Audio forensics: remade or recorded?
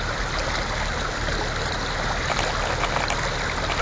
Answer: recorded